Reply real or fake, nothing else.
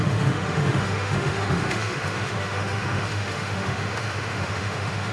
fake